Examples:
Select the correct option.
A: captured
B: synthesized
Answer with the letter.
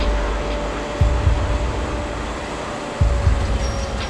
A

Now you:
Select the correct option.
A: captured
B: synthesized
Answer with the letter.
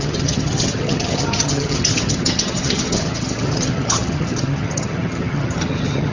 B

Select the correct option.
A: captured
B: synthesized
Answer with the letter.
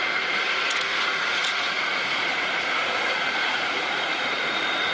B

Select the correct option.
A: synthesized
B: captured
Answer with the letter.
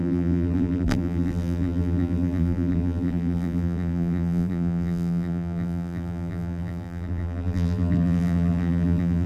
A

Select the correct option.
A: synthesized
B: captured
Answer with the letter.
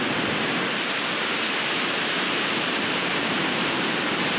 A